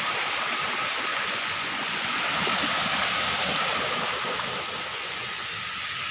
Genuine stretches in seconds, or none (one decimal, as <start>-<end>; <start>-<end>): 0.0-1.1; 2.2-4.9; 5.5-6.1